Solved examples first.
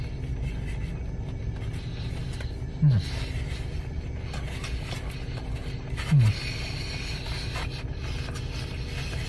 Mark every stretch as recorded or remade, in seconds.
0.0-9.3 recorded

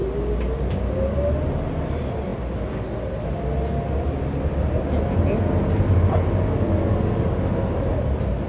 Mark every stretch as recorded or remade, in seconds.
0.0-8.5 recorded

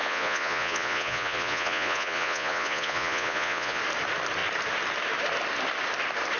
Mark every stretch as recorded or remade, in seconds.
0.0-3.8 remade; 3.8-6.4 recorded

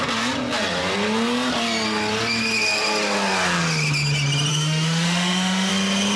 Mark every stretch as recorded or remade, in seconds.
0.0-4.5 recorded; 4.5-5.7 remade; 5.7-6.2 recorded

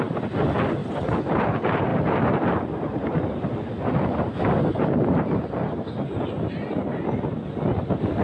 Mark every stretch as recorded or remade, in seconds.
0.0-8.2 recorded